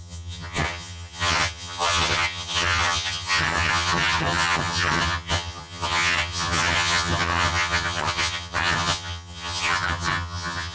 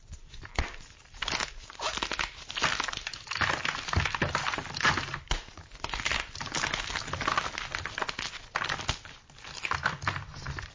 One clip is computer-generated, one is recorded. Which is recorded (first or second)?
second